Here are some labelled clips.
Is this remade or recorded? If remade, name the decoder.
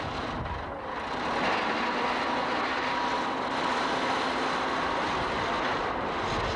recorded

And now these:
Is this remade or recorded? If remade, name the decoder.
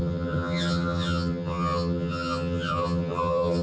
remade, vocoder, HiFi-GAN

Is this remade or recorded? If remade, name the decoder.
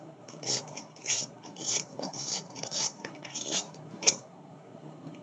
remade, codec, SNAC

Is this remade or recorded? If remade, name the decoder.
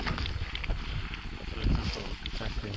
recorded